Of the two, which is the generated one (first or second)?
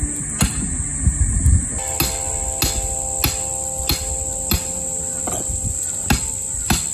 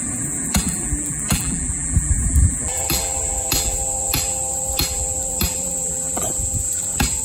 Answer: second